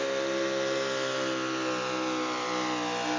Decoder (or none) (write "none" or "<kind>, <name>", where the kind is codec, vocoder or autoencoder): none